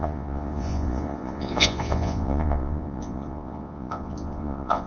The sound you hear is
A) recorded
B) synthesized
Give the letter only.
B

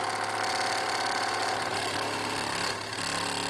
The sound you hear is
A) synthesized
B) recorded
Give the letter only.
B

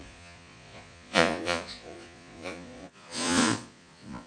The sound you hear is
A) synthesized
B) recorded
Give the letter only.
A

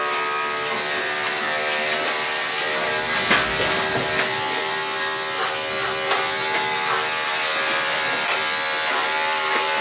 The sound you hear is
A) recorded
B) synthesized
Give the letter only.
A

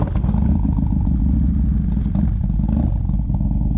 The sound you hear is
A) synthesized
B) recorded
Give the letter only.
B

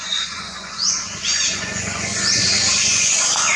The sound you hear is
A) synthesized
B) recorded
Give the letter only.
A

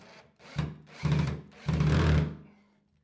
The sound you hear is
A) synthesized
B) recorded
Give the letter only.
B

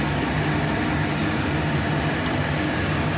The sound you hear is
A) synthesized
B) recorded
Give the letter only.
B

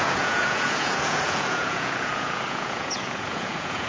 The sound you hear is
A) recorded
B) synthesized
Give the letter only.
B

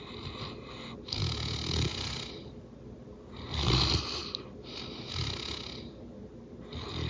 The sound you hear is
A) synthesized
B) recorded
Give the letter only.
B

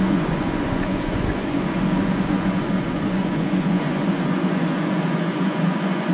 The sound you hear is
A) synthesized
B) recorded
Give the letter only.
A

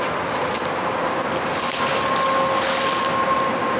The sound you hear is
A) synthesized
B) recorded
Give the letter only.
B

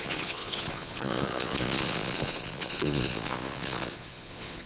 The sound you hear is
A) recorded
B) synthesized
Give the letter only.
B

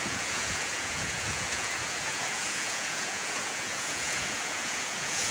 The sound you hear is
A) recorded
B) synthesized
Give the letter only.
B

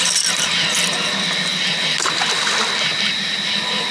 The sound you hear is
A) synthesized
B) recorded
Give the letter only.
B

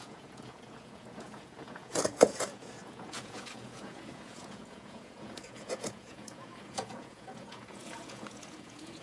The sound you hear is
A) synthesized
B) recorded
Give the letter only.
A